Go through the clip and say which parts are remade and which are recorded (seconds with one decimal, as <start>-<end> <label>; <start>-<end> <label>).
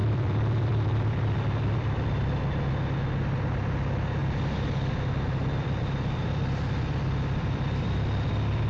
0.0-2.4 remade; 2.4-5.4 recorded; 5.4-8.7 remade